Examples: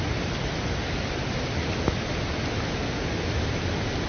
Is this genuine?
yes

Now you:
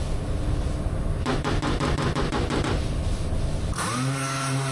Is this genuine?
yes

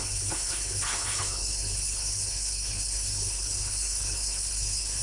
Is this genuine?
no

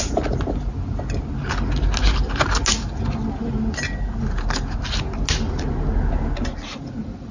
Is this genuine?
yes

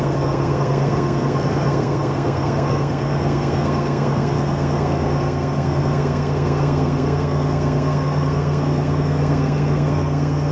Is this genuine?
no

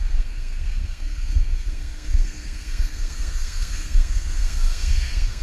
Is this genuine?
no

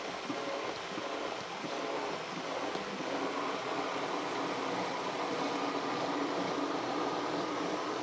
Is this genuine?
yes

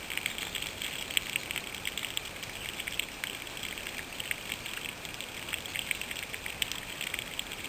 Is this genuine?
yes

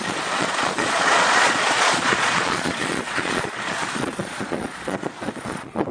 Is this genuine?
no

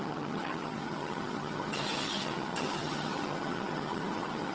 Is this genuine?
no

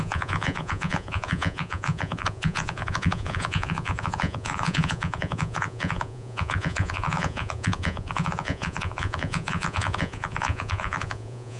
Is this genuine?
no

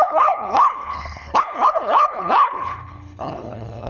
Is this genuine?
no